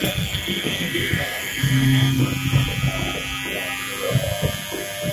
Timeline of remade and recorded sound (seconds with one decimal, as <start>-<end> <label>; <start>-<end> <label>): 0.0-2.2 remade; 2.2-5.1 recorded